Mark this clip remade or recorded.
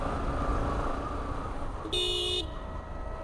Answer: recorded